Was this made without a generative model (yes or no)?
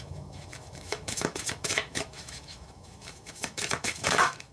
no